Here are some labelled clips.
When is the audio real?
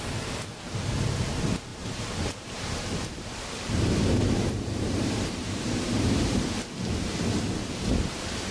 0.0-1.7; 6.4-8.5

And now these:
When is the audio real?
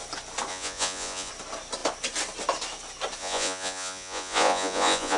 0.0-0.5; 1.3-3.2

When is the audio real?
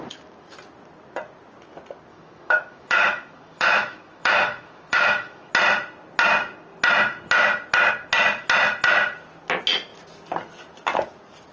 0.0-2.1; 5.5-11.5